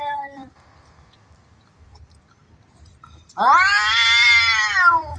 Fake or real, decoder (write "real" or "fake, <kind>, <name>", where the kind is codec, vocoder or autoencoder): fake, vocoder, BigVGAN v2